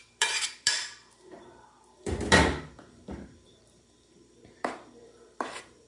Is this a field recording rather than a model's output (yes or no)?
no